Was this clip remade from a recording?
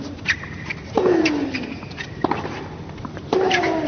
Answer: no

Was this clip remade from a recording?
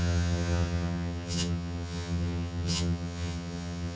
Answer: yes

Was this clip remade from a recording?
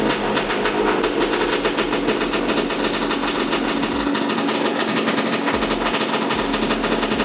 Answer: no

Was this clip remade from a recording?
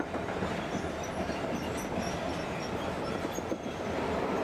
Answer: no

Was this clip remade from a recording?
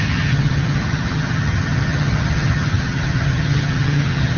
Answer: yes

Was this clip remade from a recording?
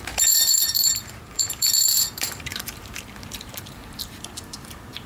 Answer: yes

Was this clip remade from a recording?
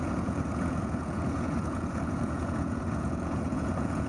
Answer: yes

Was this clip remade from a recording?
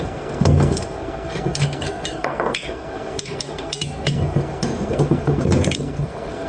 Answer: yes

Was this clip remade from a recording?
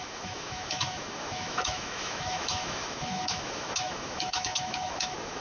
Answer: yes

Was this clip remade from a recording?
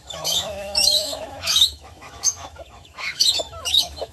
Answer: yes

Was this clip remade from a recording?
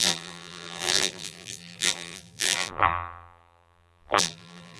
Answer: yes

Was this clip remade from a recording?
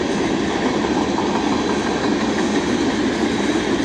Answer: no